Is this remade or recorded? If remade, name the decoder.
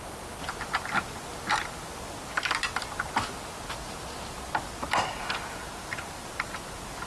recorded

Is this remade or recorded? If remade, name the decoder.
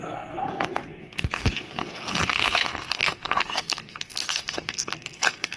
remade, codec, SNAC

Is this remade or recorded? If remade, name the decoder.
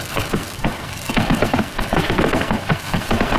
remade, codec, SNAC